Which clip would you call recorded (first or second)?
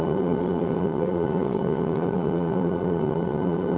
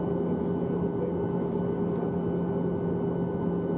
second